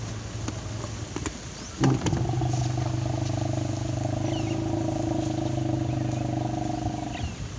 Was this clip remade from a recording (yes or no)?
no